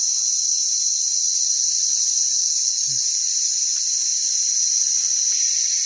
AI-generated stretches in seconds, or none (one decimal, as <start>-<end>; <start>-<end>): 2.4-3.0